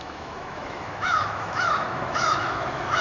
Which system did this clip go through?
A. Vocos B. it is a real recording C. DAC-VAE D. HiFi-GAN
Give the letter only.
C